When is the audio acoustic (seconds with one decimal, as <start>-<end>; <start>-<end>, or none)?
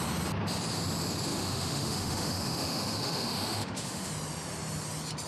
0.0-1.3; 4.1-5.3